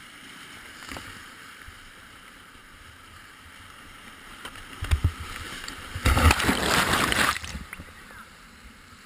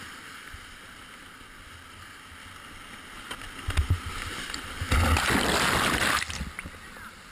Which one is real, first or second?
second